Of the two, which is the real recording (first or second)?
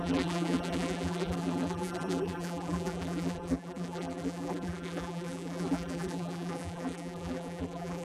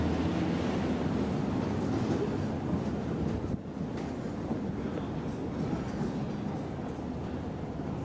second